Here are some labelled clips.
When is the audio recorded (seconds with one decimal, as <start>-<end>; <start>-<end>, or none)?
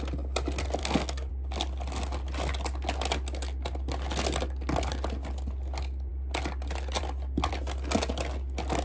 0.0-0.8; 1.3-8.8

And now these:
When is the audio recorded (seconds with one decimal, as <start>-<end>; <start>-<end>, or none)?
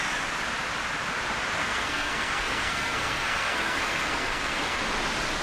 0.0-1.6; 4.8-5.4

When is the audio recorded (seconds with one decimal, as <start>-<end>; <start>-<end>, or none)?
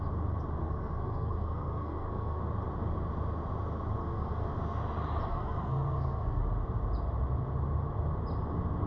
0.0-0.6; 2.4-4.0; 4.6-5.3; 6.4-8.9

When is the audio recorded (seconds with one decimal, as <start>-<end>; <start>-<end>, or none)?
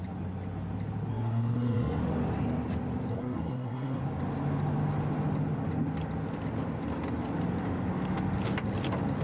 0.0-1.1; 2.0-3.1; 4.0-9.2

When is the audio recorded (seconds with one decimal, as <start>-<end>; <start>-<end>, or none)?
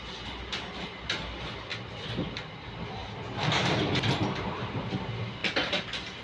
0.0-6.2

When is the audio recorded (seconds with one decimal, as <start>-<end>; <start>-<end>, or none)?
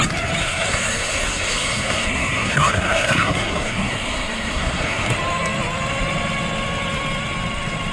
0.0-0.4; 5.1-7.9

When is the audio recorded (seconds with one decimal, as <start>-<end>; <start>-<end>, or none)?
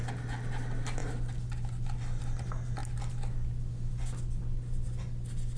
0.0-5.6